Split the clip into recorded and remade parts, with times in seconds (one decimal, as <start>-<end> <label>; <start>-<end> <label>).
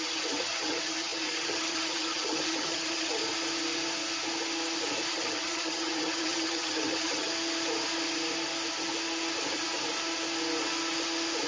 0.0-3.2 remade; 3.2-5.1 recorded; 5.1-7.3 remade; 7.3-11.5 recorded